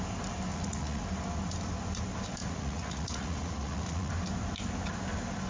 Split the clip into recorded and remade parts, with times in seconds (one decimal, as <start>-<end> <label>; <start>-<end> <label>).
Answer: 0.0-0.5 recorded; 0.5-1.0 remade; 1.0-2.4 recorded; 2.4-4.1 remade; 4.1-5.5 recorded